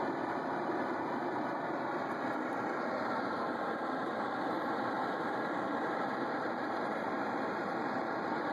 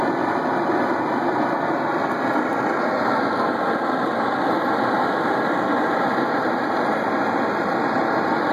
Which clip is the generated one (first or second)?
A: first